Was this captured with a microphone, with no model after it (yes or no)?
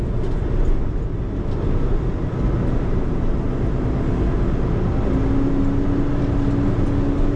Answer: yes